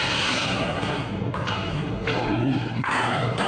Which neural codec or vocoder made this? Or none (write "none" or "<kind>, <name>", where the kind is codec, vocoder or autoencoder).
codec, SNAC